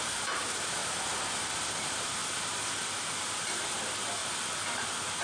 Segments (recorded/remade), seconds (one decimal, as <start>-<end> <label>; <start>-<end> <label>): 0.0-0.8 remade; 0.8-1.8 recorded; 1.8-2.2 remade; 2.2-3.0 recorded; 3.0-4.2 remade; 4.2-4.8 recorded; 4.8-5.2 remade